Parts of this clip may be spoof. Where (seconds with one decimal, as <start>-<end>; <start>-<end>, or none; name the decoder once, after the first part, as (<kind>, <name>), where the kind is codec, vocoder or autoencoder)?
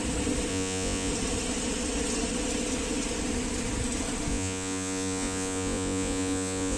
0.5-1.1 (vocoder, Vocos); 4.3-6.8